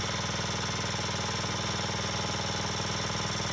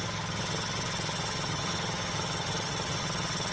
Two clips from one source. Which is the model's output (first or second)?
second